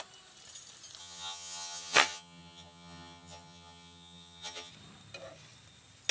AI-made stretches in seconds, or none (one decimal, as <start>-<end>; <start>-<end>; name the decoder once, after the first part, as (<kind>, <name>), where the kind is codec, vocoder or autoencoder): 1.0-4.7 (vocoder, HiFi-GAN)